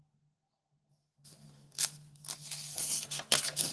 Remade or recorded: remade